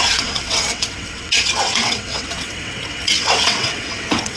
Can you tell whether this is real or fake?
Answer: fake